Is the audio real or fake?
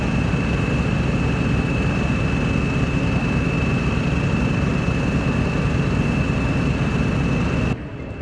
real